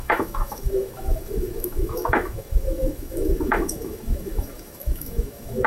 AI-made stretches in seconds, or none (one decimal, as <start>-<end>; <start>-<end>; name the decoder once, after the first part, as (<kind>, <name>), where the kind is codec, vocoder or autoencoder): 0.0-5.7 (autoencoder, DAC-VAE)